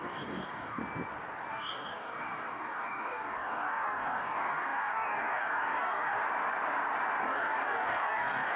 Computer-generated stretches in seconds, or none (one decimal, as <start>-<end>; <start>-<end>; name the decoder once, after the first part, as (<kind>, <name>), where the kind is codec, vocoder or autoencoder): 0.0-0.8 (codec, DAC); 1.5-6.2; 7.2-8.6